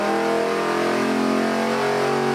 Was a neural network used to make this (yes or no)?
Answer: no